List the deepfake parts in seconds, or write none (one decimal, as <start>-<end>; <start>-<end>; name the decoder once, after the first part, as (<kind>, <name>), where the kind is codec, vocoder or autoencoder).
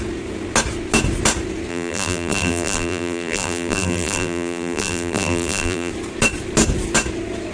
1.7-5.9 (vocoder, BigVGAN v2)